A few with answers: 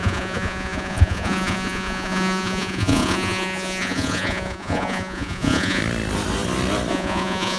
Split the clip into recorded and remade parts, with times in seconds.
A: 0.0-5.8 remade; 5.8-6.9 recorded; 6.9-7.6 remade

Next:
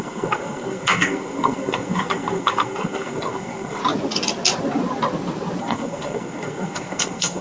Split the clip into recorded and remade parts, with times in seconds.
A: 0.0-3.8 remade; 3.8-5.6 recorded; 5.6-7.4 remade